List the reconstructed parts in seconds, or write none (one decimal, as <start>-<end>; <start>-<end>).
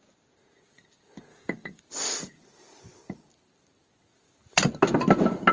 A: 1.3-1.8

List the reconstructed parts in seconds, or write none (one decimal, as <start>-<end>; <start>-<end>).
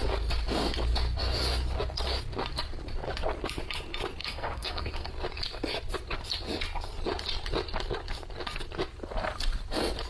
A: 4.2-5.1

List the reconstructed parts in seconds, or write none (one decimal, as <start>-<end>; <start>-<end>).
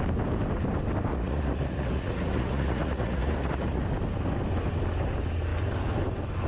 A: 1.1-3.8